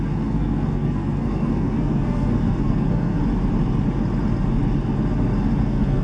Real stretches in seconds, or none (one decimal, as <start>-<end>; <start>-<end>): 3.2-5.6